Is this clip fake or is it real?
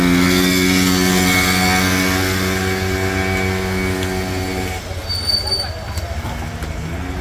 real